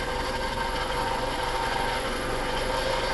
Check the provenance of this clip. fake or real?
fake